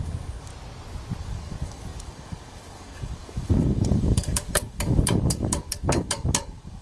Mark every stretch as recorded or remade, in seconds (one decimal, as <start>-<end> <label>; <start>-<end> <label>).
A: 0.0-0.5 remade; 0.5-1.2 recorded; 1.2-6.8 remade